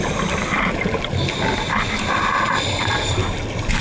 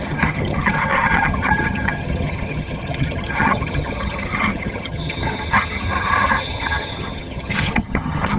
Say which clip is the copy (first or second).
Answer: second